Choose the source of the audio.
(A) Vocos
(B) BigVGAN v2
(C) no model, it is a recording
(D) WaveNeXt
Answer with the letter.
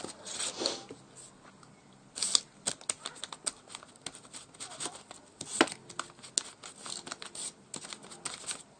C